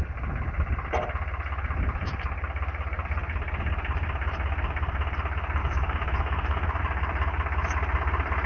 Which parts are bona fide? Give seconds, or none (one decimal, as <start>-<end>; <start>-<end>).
0.0-5.6; 6.8-8.5